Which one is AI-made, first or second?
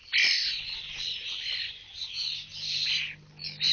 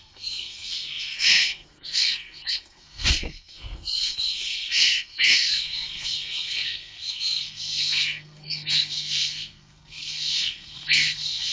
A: second